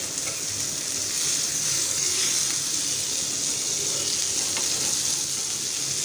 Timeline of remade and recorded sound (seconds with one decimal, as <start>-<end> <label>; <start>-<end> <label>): 0.0-1.5 recorded; 1.5-2.3 remade; 2.3-6.0 recorded